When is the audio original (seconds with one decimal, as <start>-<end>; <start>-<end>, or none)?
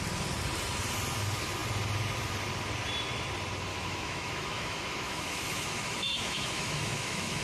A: 0.0-3.7